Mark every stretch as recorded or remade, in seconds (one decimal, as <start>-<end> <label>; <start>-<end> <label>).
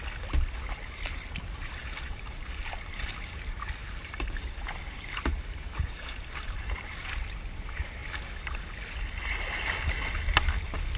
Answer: 0.0-1.8 recorded; 1.8-3.2 remade; 3.2-3.8 recorded; 3.8-7.1 remade; 7.1-11.0 recorded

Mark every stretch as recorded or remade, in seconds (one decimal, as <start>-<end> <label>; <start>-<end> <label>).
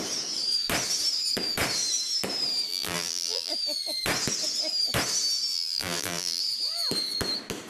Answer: 0.0-2.7 recorded; 2.7-3.5 remade; 3.5-5.5 recorded; 5.5-6.4 remade; 6.4-7.7 recorded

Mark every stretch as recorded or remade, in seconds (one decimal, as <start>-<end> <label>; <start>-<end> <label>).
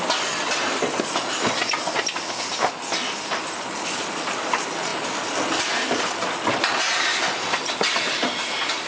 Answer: 0.0-8.9 recorded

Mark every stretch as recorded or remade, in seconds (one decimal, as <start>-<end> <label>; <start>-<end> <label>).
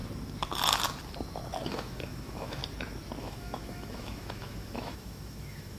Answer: 0.0-1.7 recorded; 1.7-2.6 remade; 2.6-3.2 recorded; 3.2-5.8 remade